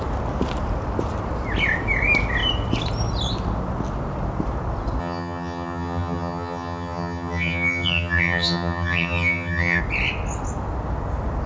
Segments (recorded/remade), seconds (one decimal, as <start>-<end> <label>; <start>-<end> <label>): 0.0-5.0 recorded; 5.0-9.8 remade; 9.8-11.5 recorded